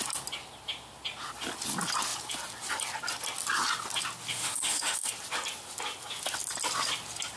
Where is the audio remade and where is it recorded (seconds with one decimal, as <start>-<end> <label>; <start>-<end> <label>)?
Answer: 0.0-4.3 recorded; 4.3-5.1 remade; 5.1-7.4 recorded

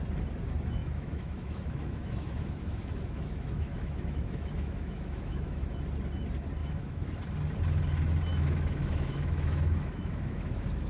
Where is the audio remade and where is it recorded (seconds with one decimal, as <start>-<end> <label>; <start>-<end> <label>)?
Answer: 0.0-0.8 recorded; 0.8-5.6 remade; 5.6-6.6 recorded; 6.6-7.2 remade; 7.2-8.3 recorded; 8.3-10.9 remade

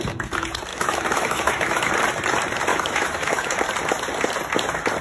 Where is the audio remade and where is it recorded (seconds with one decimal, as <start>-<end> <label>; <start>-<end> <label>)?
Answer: 0.0-0.7 recorded; 0.7-1.9 remade; 1.9-2.7 recorded; 2.7-3.6 remade; 3.6-5.0 recorded

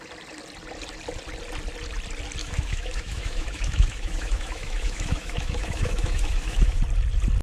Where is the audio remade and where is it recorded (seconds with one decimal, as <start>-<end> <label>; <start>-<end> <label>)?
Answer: 0.0-2.4 recorded; 2.4-6.8 remade; 6.8-7.4 recorded

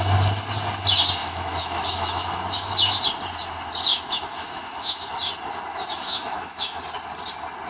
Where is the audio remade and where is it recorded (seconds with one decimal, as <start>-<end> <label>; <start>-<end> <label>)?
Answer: 0.0-1.2 recorded; 1.2-3.0 remade; 3.0-3.9 recorded; 3.9-5.1 remade; 5.1-5.7 recorded; 5.7-6.8 remade; 6.8-7.7 recorded

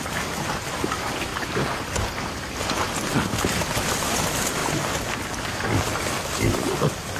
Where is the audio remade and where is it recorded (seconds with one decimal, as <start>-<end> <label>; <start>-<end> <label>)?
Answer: 0.0-7.2 recorded

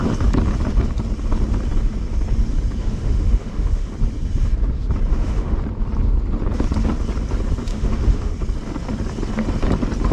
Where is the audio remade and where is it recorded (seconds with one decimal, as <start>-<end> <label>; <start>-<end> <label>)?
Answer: 0.0-2.8 recorded; 2.8-3.9 remade; 3.9-5.1 recorded; 5.1-5.6 remade; 5.6-7.7 recorded; 7.7-8.3 remade; 8.3-10.1 recorded

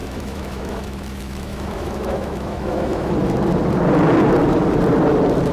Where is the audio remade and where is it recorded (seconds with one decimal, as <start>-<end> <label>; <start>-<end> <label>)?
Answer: 0.0-3.1 remade; 3.1-5.5 recorded